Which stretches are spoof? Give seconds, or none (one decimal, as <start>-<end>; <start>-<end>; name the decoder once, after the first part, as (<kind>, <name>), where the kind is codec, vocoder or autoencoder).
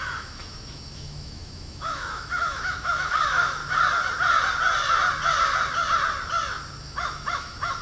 0.0-3.6 (autoencoder, DAC-VAE); 6.8-7.8